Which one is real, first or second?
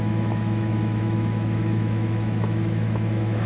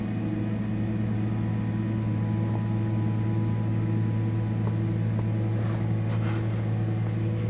second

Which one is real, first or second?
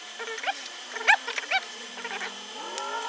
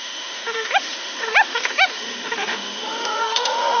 first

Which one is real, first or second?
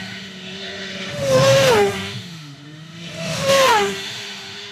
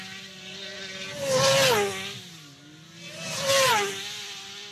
second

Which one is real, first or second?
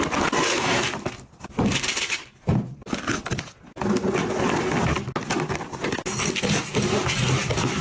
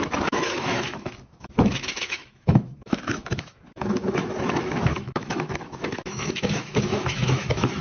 first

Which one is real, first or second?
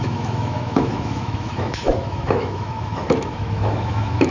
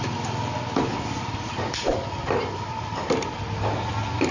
second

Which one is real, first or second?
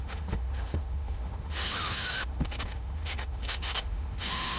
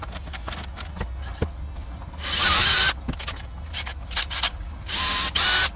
second